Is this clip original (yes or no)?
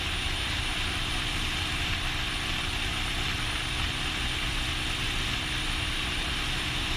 yes